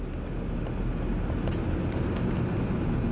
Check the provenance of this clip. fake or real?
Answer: real